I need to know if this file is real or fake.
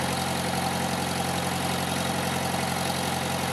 real